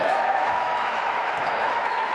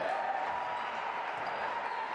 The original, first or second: second